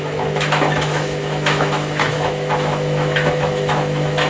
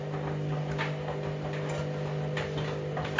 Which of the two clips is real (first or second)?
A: second